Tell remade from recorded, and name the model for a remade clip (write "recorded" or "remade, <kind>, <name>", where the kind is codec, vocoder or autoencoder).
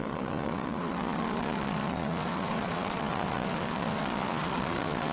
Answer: remade, vocoder, Vocos